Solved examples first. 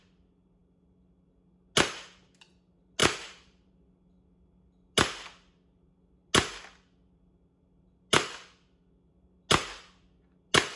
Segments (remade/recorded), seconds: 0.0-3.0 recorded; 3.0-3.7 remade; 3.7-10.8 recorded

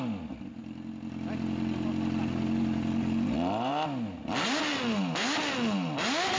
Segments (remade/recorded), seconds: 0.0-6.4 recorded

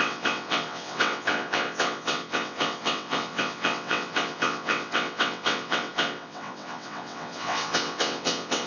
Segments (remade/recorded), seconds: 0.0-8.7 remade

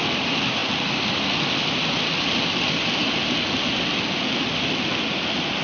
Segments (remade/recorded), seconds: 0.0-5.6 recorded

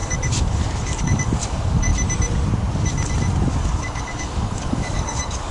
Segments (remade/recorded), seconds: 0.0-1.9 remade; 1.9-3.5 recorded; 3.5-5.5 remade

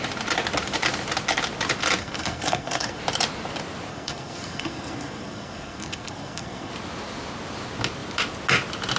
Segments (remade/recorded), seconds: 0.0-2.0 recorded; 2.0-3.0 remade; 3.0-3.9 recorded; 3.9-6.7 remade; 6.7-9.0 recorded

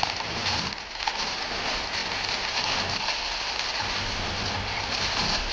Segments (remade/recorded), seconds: 0.0-5.5 recorded